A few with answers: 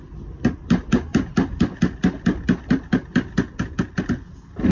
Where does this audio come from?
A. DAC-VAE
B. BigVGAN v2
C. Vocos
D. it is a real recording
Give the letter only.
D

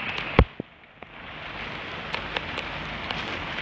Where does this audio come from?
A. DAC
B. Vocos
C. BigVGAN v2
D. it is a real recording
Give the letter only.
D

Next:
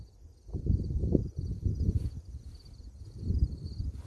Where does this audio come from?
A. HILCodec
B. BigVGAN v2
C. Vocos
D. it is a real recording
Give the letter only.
D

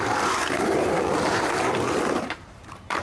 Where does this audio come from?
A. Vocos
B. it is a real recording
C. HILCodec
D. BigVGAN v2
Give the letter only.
D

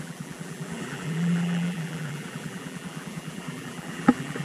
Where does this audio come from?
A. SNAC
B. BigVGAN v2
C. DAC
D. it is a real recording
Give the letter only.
B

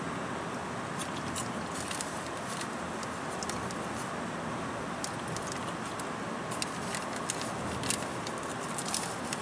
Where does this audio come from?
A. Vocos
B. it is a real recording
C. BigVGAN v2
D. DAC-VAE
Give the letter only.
B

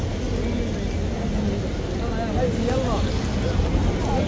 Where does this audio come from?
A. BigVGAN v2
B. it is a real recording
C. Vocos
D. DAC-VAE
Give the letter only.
B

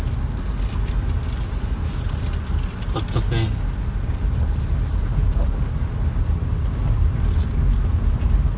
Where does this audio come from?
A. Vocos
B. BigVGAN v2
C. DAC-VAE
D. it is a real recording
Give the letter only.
D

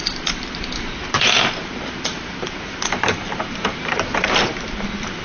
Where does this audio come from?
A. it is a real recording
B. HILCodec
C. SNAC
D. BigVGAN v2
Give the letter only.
D